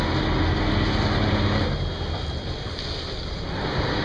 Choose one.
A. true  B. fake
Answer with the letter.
A